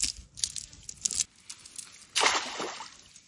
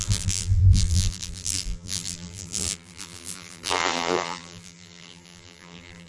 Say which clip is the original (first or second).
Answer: first